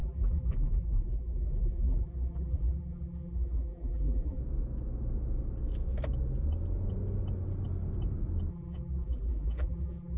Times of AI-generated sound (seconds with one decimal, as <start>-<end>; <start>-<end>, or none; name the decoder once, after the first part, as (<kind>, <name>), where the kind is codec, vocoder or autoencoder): 0.0-4.4 (vocoder, BigVGAN v2); 8.5-10.2